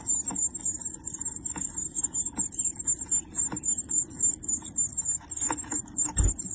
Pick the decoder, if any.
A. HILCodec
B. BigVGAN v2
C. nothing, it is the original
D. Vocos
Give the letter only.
C